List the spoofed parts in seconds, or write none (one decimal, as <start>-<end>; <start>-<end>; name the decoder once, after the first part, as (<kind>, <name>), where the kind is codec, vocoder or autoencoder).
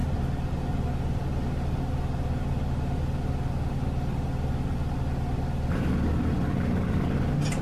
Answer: none